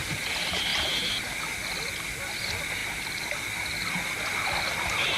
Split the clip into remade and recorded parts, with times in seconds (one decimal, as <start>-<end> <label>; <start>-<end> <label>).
0.0-2.8 recorded; 2.8-3.4 remade; 3.4-5.2 recorded